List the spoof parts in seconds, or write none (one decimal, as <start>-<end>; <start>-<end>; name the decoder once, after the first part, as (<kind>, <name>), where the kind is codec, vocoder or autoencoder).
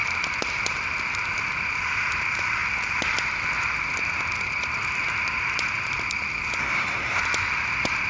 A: 6.6-7.2 (codec, SNAC)